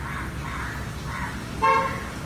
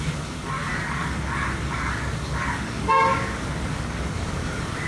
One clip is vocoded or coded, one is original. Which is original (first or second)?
first